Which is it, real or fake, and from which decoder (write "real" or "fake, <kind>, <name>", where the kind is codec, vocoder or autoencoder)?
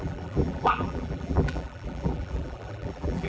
fake, vocoder, BigVGAN v2